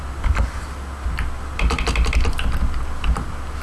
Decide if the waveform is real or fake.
real